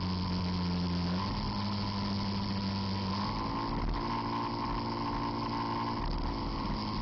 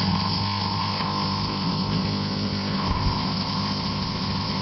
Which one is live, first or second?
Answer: first